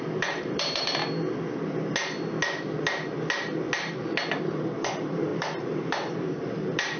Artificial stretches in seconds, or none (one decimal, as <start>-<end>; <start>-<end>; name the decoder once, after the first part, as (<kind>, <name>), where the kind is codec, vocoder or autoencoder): 0.0-1.0 (vocoder, BigVGAN v2); 4.4-7.0